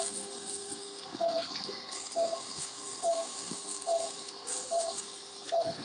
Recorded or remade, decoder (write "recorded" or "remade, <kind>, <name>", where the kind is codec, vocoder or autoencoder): remade, codec, SNAC